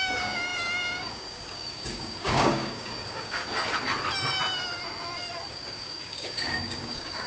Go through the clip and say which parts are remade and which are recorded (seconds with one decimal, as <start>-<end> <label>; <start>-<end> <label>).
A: 0.0-3.4 remade; 3.4-5.5 recorded; 5.5-7.3 remade